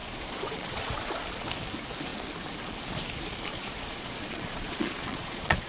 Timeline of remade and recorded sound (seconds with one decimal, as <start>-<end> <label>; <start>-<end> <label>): 0.0-0.8 remade; 0.8-3.5 recorded; 3.5-5.7 remade

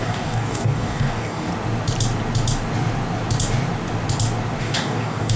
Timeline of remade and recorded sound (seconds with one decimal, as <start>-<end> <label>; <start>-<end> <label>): 0.0-1.5 remade; 1.5-4.6 recorded; 4.6-5.4 remade

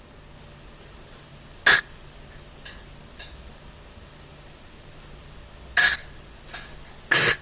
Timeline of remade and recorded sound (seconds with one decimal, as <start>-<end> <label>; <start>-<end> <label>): 0.0-7.4 recorded

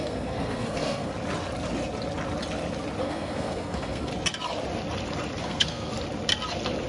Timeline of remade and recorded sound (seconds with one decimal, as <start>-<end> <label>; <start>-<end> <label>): 0.0-1.1 remade; 1.1-3.0 recorded; 3.0-4.1 remade; 4.1-5.4 recorded; 5.4-5.9 remade; 5.9-6.9 recorded